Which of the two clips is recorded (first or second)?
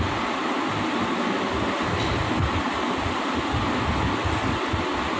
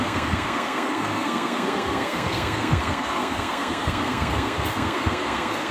first